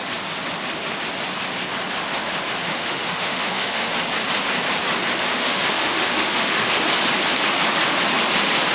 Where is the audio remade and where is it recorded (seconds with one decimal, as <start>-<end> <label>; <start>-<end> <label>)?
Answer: 0.0-2.6 recorded; 2.6-3.9 remade; 3.9-5.3 recorded; 5.3-6.7 remade; 6.7-8.7 recorded